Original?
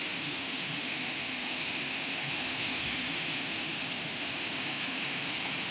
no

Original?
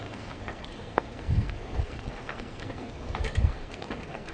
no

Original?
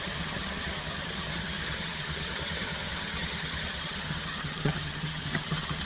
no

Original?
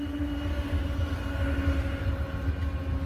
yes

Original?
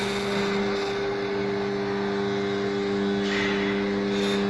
yes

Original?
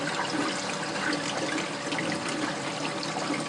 yes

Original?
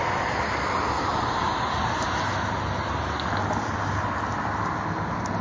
yes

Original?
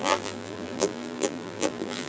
no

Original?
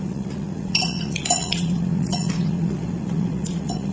no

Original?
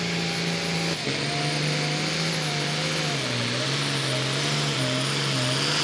yes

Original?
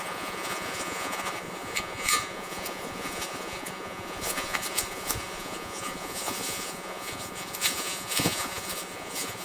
no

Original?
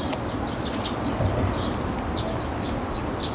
yes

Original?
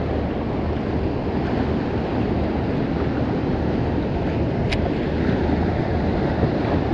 yes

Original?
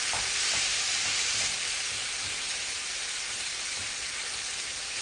no